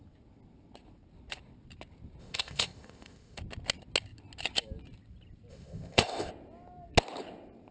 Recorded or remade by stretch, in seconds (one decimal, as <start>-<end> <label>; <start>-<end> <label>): 0.0-2.2 recorded; 2.2-3.4 remade; 3.4-5.5 recorded; 5.5-6.3 remade; 6.3-7.7 recorded